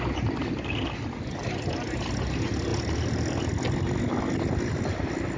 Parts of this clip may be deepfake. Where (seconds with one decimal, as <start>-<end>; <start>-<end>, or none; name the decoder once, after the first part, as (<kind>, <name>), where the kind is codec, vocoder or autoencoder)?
none